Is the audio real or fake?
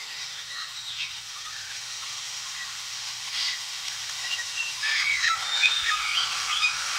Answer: fake